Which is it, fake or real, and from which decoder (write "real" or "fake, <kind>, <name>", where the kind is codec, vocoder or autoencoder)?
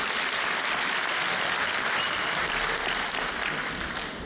real